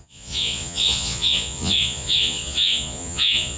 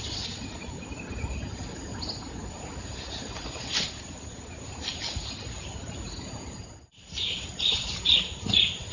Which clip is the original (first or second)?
second